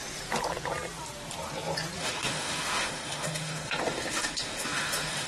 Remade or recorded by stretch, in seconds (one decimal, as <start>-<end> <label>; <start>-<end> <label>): 0.0-2.0 recorded; 2.0-5.3 remade